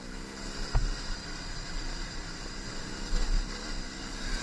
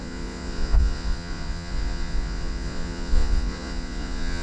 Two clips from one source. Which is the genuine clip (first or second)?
first